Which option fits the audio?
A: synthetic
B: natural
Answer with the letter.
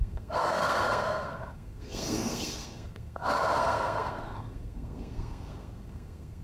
A